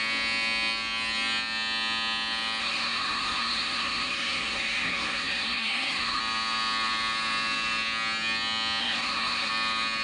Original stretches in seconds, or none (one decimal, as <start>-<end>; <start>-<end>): 0.0-2.6; 6.2-8.8; 9.5-10.0